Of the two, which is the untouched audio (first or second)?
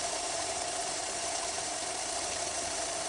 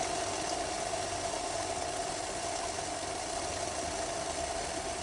second